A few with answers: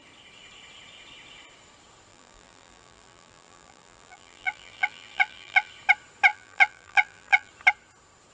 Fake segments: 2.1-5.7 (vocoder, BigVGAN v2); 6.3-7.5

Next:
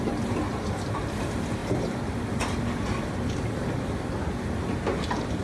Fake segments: none